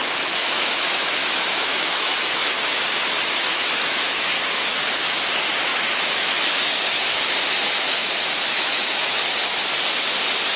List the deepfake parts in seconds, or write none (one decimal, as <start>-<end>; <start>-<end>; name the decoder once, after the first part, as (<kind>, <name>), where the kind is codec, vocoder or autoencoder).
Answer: 0.0-5.2 (autoencoder, DAC-VAE); 5.7-9.4